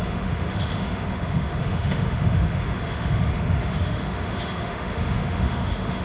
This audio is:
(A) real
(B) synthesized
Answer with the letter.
B